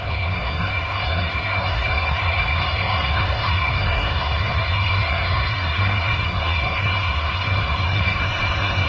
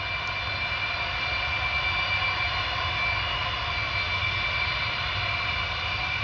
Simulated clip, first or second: first